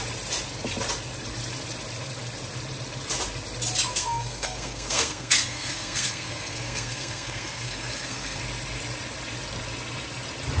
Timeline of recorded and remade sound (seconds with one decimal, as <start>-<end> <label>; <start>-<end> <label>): 0.0-3.9 recorded; 3.9-8.4 remade; 8.4-10.6 recorded